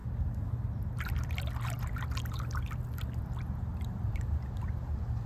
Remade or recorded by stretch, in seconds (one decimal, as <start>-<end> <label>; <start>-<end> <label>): 0.0-3.7 recorded; 3.7-4.3 remade; 4.3-5.3 recorded